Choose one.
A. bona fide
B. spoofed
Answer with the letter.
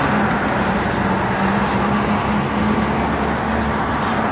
A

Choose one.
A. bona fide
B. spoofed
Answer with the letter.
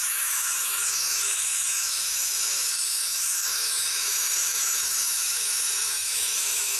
B